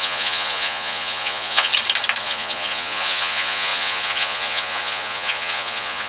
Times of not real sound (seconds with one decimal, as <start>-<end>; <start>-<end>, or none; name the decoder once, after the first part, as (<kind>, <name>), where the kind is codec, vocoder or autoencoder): 0.0-1.7 (vocoder, Vocos); 2.2-6.1